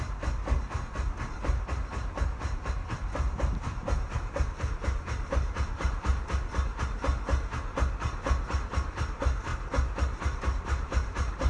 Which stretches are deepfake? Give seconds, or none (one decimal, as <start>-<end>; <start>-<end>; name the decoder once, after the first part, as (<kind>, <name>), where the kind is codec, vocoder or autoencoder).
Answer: 0.0-6.1 (vocoder, BigVGAN v2); 8.6-9.5; 10.4-11.5